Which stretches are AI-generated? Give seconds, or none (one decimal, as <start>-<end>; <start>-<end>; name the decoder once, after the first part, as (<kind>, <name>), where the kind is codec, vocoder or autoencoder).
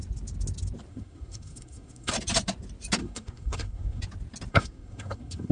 0.9-2.1 (codec, SNAC); 3.0-4.0; 4.5-5.5